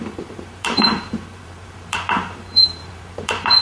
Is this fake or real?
fake